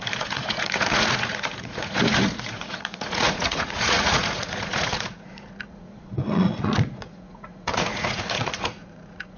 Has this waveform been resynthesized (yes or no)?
yes